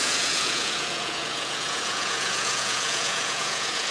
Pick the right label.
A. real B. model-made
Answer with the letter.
B